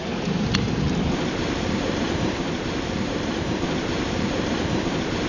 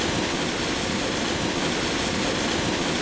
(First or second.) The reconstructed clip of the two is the first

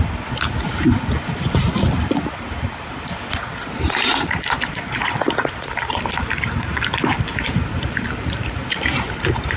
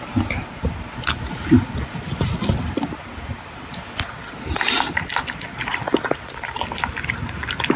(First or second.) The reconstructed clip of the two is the first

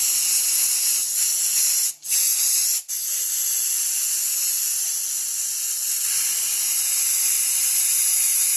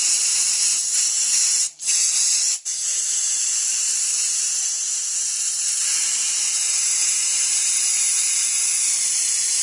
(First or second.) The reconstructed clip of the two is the second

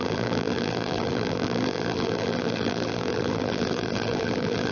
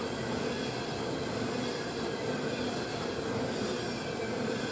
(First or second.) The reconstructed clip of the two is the first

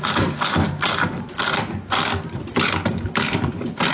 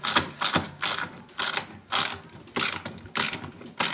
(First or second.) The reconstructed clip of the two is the first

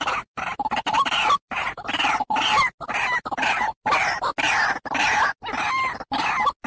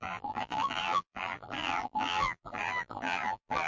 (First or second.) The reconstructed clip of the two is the second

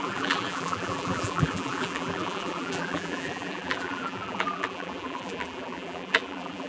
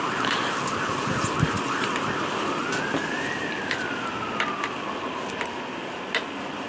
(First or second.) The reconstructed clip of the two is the first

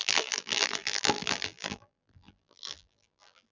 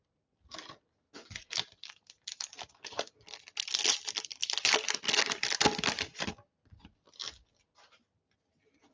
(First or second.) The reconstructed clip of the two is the first